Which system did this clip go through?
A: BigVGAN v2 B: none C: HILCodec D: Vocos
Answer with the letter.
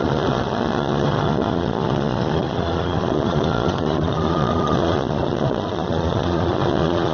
D